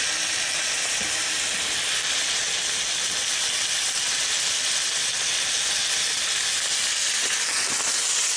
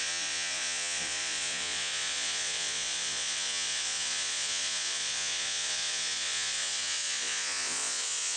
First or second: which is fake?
second